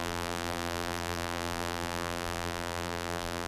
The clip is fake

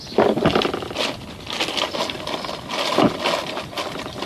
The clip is real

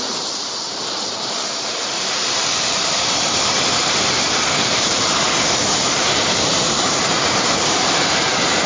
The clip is fake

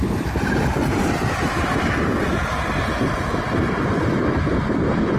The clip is real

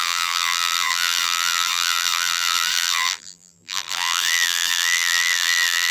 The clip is fake